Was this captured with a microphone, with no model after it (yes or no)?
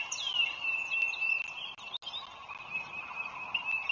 yes